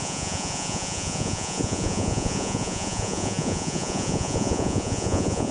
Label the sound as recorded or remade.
remade